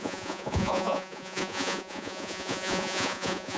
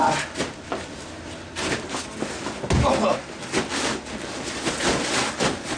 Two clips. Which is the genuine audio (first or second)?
second